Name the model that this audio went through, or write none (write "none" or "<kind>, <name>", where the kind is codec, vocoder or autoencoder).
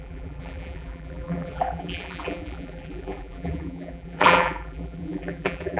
vocoder, BigVGAN v2